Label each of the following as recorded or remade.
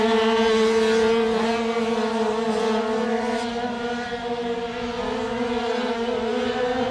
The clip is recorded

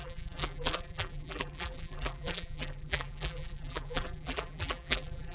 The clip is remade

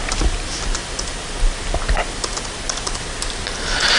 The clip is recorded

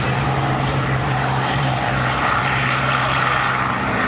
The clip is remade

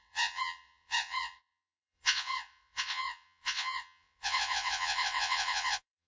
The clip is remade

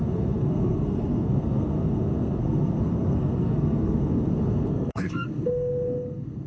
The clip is remade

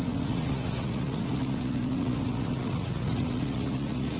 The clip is remade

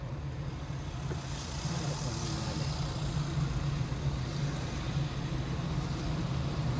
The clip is recorded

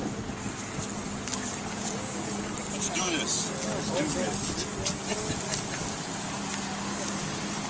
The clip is recorded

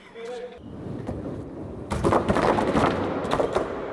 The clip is remade